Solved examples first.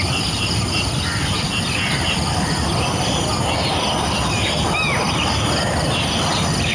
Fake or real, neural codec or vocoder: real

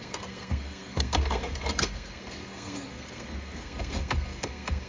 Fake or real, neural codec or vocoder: fake, codec, SNAC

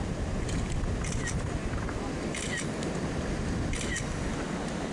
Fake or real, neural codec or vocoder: real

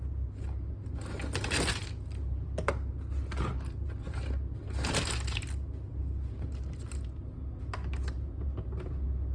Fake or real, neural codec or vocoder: real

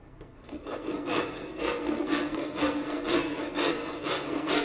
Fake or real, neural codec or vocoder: fake, codec, SNAC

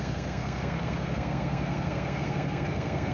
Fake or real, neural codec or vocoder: fake, codec, SNAC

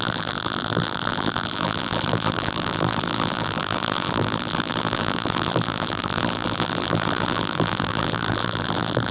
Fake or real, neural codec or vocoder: fake, vocoder, BigVGAN v2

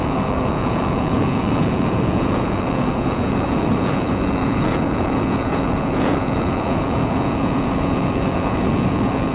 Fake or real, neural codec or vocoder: fake, vocoder, Vocos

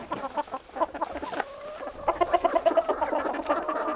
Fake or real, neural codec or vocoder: real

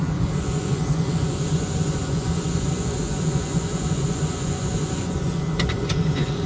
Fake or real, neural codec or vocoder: fake, vocoder, Vocos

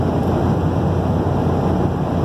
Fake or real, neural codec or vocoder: real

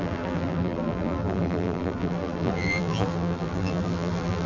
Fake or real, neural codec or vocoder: fake, vocoder, BigVGAN v2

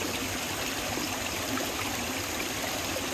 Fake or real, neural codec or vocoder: real